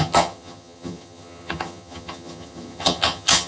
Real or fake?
fake